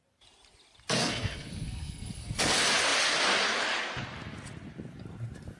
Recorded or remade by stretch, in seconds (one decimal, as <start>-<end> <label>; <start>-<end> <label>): 0.0-1.0 recorded; 1.0-2.4 remade; 2.4-5.6 recorded